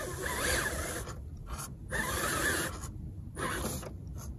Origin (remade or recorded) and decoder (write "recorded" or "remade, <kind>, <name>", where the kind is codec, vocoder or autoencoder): recorded